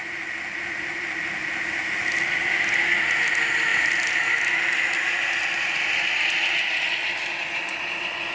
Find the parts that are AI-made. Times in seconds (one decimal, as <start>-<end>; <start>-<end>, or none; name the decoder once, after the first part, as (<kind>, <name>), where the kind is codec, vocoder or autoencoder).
none